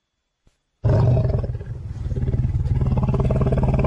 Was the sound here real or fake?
real